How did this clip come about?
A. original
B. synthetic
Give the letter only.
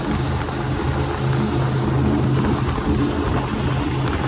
A